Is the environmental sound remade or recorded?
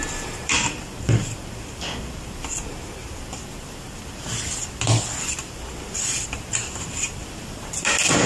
remade